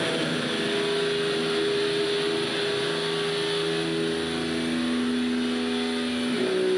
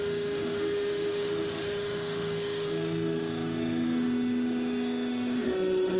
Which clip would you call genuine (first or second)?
first